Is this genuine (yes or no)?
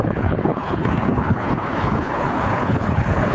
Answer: no